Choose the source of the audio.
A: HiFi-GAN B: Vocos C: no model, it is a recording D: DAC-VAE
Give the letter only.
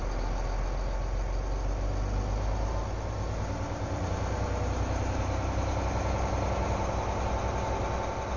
C